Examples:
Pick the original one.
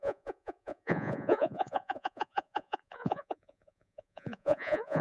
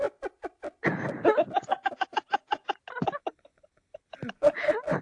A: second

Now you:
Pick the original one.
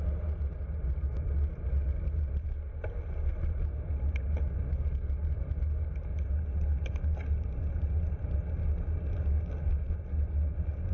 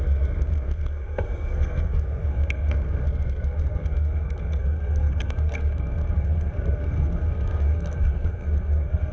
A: first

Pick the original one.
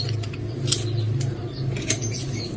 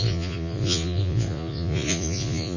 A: first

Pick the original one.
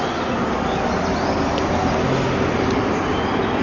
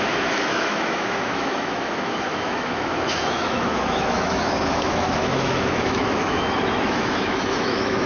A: first